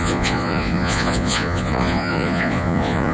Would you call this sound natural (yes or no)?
no